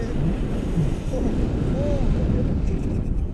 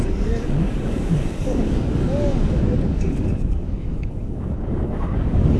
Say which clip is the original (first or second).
first